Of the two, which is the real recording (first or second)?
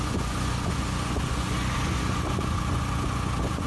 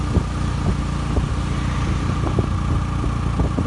second